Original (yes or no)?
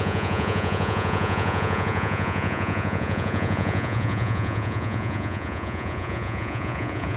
no